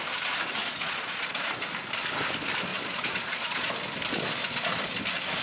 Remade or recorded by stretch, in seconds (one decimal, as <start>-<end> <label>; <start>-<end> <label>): 0.0-0.6 recorded; 0.6-1.5 remade; 1.5-2.7 recorded; 2.7-3.7 remade; 3.7-5.4 recorded